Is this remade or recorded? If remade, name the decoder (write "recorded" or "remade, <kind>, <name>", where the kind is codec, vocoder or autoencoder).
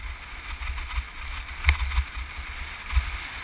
recorded